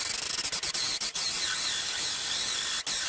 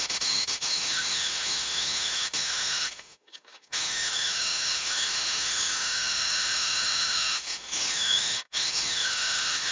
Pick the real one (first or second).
first